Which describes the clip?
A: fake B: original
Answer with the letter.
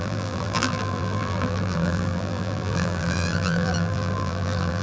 A